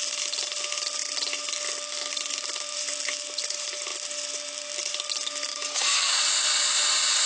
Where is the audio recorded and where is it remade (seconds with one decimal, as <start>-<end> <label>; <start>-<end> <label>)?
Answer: 0.0-5.5 recorded; 5.5-6.1 remade; 6.1-7.3 recorded

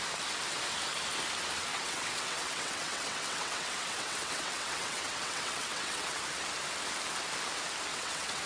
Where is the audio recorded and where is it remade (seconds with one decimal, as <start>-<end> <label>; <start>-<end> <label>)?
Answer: 0.0-1.7 recorded; 1.7-6.2 remade; 6.2-7.9 recorded; 7.9-8.5 remade